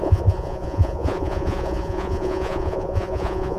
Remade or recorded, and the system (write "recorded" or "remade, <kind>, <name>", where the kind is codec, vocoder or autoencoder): remade, vocoder, Vocos